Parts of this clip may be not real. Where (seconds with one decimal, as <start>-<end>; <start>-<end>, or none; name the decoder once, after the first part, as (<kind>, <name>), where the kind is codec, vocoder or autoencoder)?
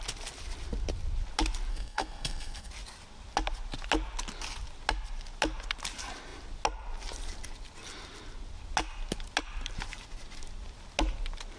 1.7-2.7 (codec, SNAC)